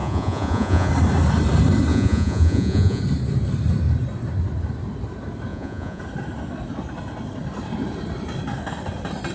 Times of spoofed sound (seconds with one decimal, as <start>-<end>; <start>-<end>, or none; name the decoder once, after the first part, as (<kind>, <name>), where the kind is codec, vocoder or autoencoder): 0.0-0.9 (vocoder, Vocos); 1.9-3.0; 5.5-6.0